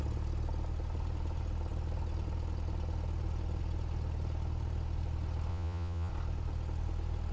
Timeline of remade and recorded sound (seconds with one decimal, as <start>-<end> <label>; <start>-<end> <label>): 0.0-5.5 recorded; 5.5-6.1 remade; 6.1-7.3 recorded